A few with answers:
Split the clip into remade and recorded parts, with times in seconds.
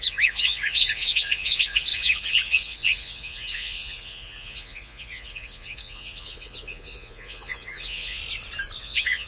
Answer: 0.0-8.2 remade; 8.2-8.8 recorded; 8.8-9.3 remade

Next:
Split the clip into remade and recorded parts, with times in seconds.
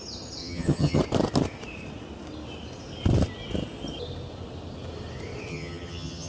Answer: 0.0-0.4 recorded; 0.4-1.0 remade; 1.0-5.5 recorded; 5.5-6.3 remade